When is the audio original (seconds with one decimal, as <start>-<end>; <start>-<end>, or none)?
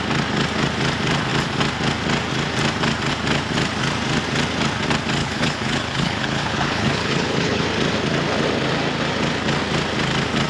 0.0-5.2; 7.6-10.5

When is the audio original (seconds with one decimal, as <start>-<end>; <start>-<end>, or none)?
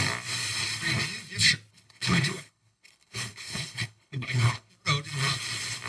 0.0-1.7; 4.7-5.9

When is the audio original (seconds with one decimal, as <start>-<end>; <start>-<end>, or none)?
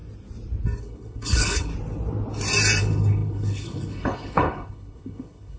0.0-0.8; 1.7-2.8